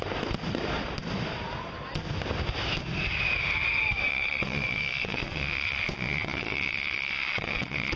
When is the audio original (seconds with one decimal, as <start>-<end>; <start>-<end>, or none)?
0.0-4.1